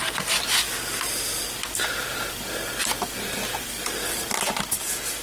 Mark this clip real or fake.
real